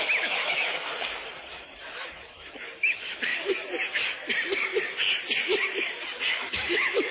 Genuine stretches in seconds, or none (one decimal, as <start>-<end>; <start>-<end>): 0.9-1.5; 3.3-6.3